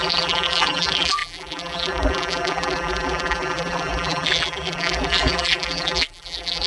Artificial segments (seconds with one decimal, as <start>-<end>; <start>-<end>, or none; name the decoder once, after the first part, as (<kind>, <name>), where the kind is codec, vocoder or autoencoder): 0.0-6.7 (vocoder, BigVGAN v2)